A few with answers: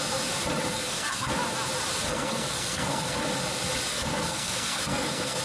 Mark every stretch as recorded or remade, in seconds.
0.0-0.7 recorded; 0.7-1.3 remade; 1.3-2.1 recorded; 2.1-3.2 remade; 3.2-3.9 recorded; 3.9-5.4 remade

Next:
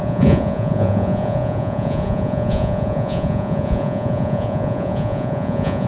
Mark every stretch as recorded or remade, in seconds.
0.0-5.9 remade

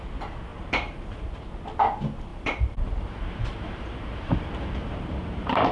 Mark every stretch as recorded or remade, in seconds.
0.0-0.5 recorded; 0.5-1.3 remade; 1.3-2.3 recorded; 2.3-5.7 remade

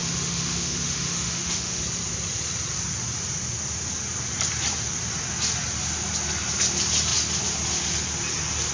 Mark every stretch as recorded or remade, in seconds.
0.0-1.8 remade; 1.8-8.7 recorded

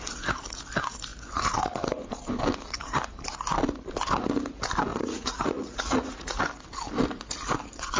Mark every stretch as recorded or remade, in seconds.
0.0-4.9 recorded; 4.9-6.4 remade; 6.4-8.0 recorded